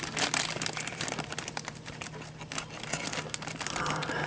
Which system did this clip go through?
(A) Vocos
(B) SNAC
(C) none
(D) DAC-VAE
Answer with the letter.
C